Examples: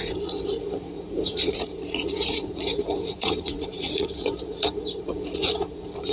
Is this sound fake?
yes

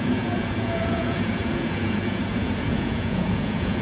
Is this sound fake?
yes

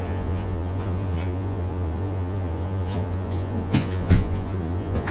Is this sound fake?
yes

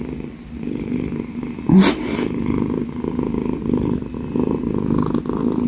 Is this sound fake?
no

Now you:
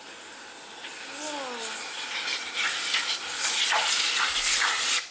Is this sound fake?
no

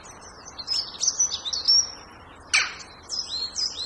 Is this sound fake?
no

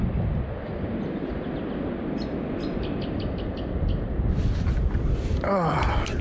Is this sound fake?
no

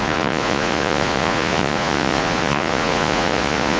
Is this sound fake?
yes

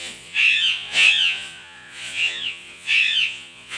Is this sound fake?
yes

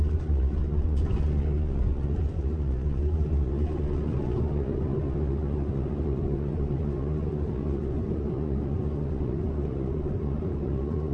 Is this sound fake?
yes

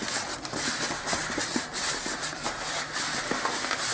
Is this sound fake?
no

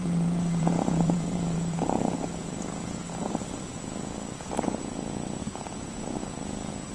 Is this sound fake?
yes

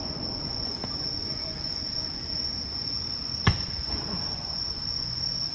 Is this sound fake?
yes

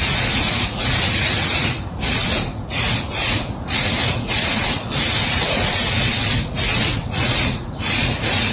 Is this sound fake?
yes